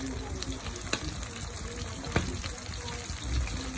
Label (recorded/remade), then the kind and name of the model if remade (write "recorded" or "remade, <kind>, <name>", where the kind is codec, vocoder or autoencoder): recorded